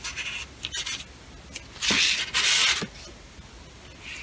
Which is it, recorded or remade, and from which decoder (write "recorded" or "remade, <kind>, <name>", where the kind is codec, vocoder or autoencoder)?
recorded